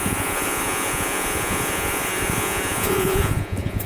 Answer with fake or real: fake